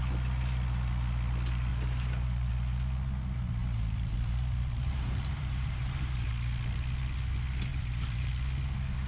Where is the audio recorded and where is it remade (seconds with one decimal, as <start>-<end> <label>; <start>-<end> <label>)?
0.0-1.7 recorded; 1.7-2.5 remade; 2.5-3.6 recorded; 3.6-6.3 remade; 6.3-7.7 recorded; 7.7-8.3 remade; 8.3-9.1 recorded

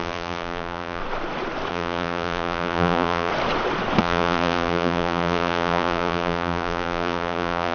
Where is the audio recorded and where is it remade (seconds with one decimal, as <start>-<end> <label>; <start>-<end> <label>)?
0.0-1.0 remade; 1.0-1.7 recorded; 1.7-3.3 remade; 3.3-4.0 recorded; 4.0-7.7 remade

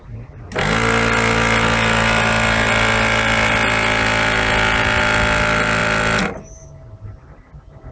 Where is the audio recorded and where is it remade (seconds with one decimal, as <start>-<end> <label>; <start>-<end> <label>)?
0.0-7.9 recorded

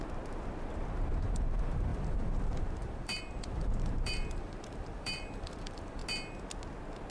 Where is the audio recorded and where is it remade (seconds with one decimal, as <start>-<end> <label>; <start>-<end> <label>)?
0.0-1.1 recorded; 1.1-6.0 remade; 6.0-7.1 recorded

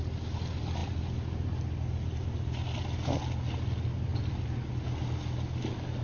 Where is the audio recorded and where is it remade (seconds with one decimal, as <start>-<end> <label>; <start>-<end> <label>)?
0.0-4.1 recorded; 4.1-4.7 remade; 4.7-6.0 recorded

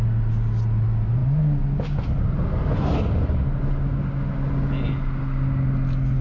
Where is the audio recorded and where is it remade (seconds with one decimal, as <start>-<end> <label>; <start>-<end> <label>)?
0.0-6.2 recorded

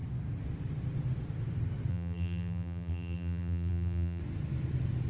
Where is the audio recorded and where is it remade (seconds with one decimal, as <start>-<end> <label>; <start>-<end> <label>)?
0.0-1.9 recorded; 1.9-4.2 remade; 4.2-5.1 recorded